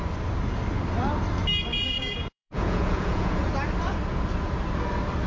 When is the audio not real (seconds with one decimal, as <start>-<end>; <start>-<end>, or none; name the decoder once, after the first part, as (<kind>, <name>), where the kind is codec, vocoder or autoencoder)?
1.7-3.5 (vocoder, Vocos)